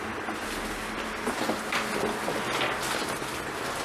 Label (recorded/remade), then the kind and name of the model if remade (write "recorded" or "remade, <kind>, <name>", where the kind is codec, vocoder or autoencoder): recorded